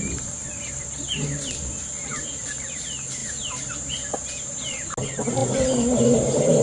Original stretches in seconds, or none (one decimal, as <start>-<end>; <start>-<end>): 0.0-6.6